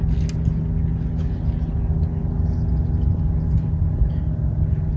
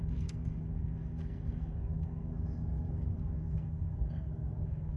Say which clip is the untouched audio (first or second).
first